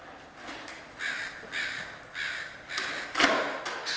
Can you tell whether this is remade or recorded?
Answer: recorded